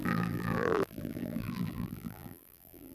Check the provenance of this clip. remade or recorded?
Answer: remade